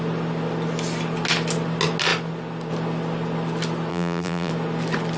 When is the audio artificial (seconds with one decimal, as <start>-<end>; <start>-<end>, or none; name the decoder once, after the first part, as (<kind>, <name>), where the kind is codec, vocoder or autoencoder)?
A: 3.9-4.5 (vocoder, BigVGAN v2)